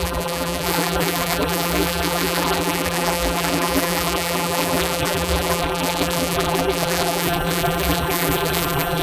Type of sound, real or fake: fake